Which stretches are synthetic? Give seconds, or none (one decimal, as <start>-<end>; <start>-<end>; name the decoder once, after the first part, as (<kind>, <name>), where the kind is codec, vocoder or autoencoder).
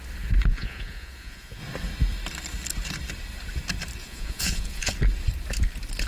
0.5-1.6 (vocoder, Vocos); 4.0-4.9